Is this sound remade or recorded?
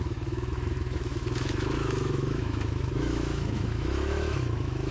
remade